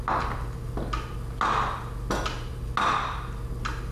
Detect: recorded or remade recorded